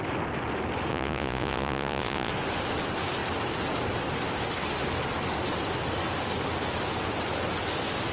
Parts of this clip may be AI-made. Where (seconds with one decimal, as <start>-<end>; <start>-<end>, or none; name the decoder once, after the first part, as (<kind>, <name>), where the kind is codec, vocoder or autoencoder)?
0.9-2.3 (vocoder, Vocos)